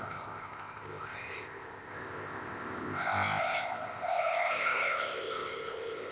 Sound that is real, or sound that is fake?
fake